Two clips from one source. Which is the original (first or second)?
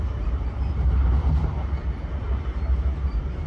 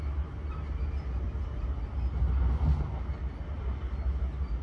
second